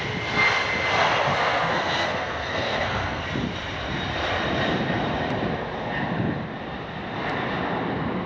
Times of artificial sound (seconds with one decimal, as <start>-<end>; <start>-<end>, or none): 1.3-3.2